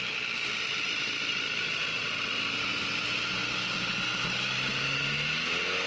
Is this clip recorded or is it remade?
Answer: recorded